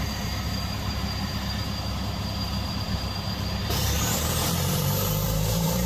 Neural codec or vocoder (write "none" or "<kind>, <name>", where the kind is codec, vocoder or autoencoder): vocoder, BigVGAN v2